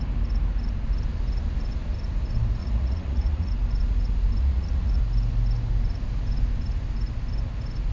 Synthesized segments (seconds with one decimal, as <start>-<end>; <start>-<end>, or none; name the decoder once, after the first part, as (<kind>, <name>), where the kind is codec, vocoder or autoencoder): 2.6-3.5 (vocoder, Vocos); 4.4-5.0